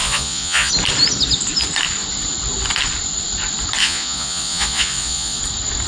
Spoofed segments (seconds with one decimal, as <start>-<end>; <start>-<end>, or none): 0.0-0.7; 3.8-5.4